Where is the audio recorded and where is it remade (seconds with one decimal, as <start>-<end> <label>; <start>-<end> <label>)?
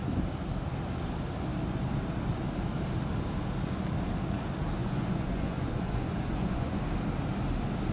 0.0-4.8 recorded; 4.8-6.8 remade; 6.8-7.9 recorded